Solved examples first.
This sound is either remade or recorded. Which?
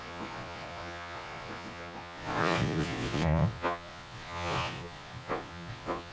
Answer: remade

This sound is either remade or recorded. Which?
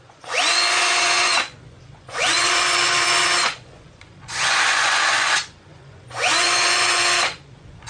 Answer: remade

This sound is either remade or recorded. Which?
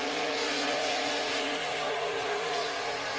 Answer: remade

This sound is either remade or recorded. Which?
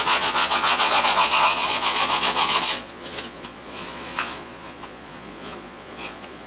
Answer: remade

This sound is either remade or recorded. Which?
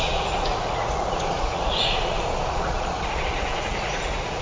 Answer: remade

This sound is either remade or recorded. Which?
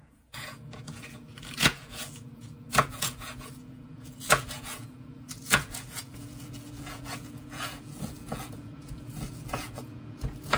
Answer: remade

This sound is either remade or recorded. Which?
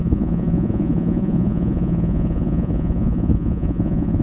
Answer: remade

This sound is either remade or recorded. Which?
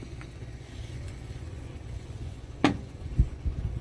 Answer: remade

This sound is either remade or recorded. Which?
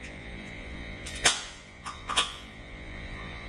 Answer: remade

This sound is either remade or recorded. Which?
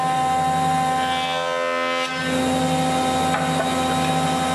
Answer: recorded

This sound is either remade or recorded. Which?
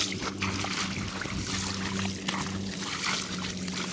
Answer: recorded